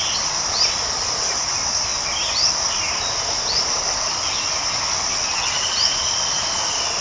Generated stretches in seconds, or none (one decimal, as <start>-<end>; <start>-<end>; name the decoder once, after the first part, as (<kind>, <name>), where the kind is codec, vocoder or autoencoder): none